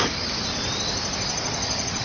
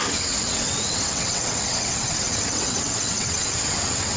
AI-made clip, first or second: second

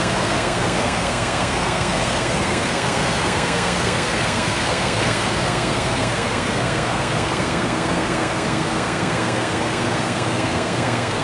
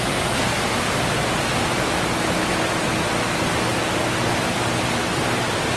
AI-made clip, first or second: first